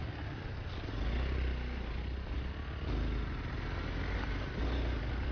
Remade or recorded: recorded